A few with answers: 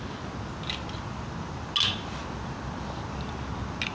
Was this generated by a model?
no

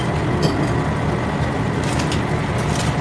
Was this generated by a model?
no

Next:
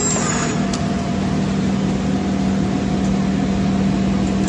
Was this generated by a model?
no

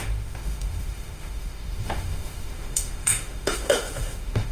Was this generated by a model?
yes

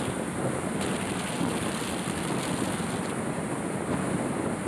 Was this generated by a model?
no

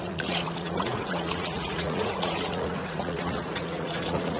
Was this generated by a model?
yes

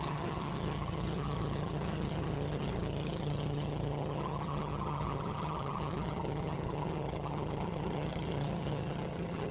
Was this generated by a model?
yes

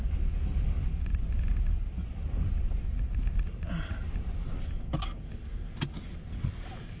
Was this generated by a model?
no